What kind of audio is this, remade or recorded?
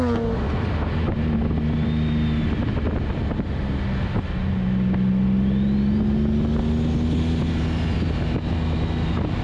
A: recorded